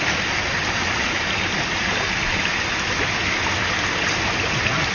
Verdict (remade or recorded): recorded